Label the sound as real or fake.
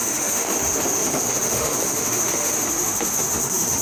fake